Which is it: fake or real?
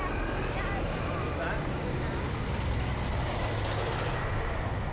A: real